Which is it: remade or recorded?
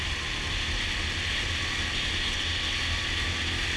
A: recorded